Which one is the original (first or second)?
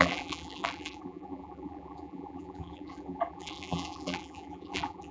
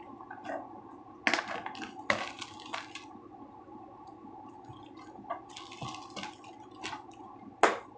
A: second